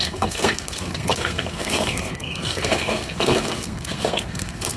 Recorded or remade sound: remade